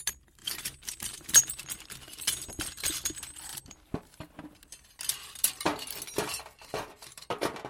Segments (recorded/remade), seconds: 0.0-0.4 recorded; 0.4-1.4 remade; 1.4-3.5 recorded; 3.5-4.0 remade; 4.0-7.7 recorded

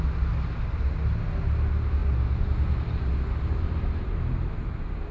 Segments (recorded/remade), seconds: 0.0-5.1 recorded